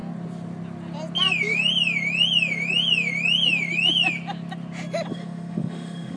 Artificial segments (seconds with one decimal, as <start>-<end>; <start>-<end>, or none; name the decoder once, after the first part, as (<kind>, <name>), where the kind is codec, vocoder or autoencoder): 5.1-6.2 (autoencoder, DAC-VAE)